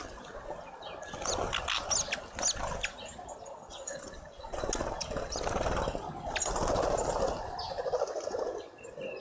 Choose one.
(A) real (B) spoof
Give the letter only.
A